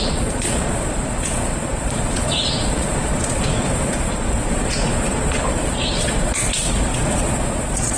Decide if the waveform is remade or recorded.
remade